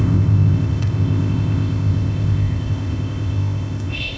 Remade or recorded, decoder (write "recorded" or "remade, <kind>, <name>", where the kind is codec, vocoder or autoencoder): remade, codec, ZipCodec